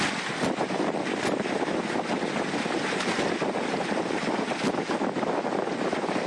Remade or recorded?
recorded